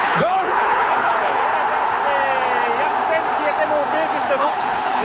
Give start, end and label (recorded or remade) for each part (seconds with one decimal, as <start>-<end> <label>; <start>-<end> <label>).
0.0-1.4 remade; 1.4-4.4 recorded; 4.4-5.0 remade